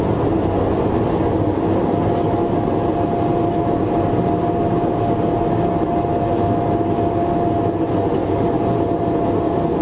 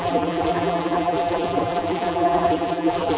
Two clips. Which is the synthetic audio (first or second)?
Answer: second